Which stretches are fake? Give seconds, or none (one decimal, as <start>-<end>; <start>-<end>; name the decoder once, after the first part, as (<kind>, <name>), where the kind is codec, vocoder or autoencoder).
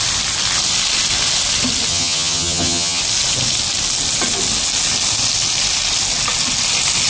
1.9-3.0 (vocoder, HiFi-GAN)